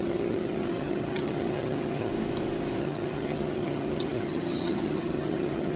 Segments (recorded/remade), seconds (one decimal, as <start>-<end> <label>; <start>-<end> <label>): 0.0-2.1 remade; 2.1-2.8 recorded; 2.8-5.8 remade